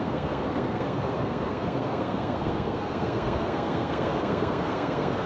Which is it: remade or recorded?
remade